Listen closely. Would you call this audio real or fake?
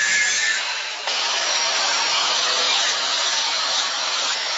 fake